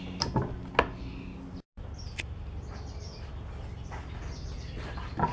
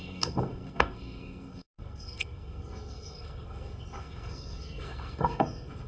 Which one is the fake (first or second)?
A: second